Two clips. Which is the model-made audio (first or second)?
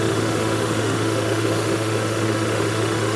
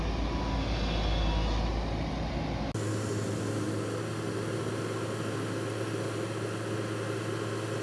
first